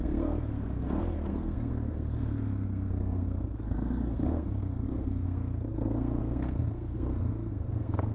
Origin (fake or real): fake